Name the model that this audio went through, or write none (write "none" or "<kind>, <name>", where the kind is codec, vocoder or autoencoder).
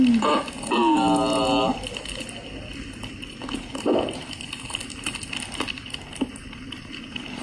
none